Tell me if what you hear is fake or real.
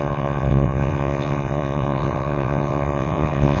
fake